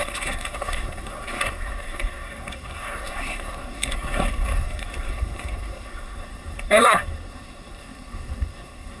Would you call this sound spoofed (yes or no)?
yes